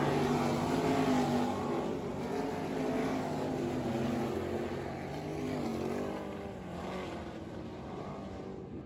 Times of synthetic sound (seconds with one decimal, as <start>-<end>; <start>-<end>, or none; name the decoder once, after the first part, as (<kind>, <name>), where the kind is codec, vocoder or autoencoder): 3.0-3.5 (codec, DAC)